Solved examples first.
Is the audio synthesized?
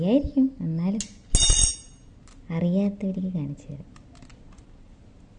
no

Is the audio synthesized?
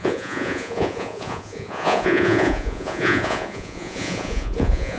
yes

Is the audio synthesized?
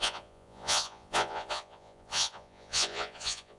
yes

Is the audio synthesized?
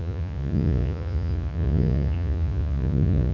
yes